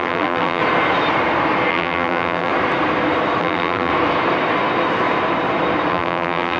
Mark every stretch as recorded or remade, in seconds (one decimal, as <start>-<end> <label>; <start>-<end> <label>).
0.0-0.6 remade; 0.6-1.7 recorded; 1.7-2.5 remade; 2.5-3.4 recorded; 3.4-3.9 remade; 3.9-5.9 recorded; 5.9-6.6 remade